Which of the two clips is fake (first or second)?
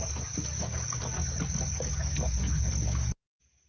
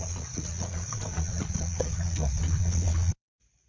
second